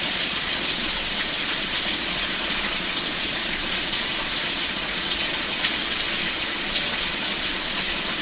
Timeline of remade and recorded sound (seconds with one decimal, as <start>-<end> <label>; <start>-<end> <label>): 0.0-5.8 remade; 5.8-6.4 recorded; 6.4-8.2 remade